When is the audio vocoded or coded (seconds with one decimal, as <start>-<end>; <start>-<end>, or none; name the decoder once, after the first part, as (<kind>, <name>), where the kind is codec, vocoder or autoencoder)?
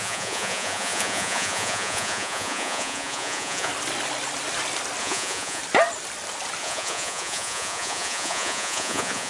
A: 0.0-3.7 (vocoder, Vocos); 5.0-5.6; 6.6-9.3